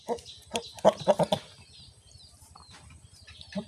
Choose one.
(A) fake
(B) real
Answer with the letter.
B